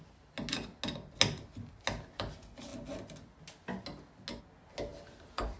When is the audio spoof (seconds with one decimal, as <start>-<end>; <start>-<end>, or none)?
none